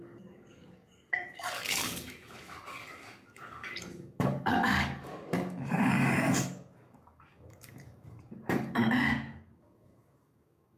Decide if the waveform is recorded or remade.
remade